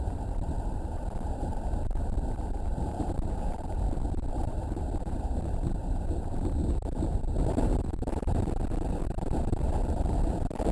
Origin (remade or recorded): remade